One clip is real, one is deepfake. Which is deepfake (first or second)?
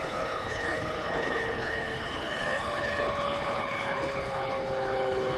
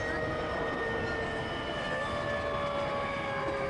first